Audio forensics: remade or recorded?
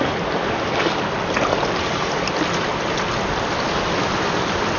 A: recorded